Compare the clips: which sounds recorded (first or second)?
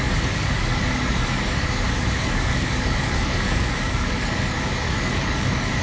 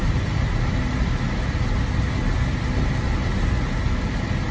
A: second